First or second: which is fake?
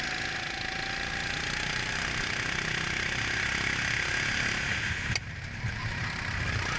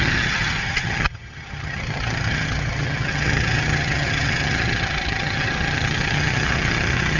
second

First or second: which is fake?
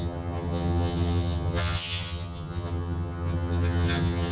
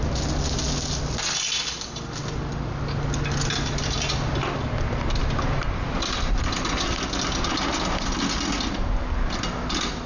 first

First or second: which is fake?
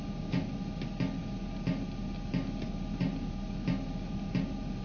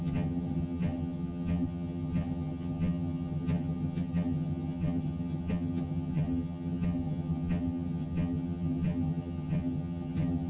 second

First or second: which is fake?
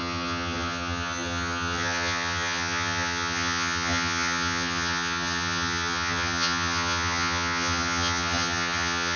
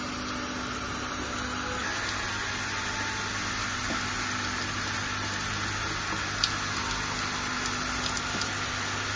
first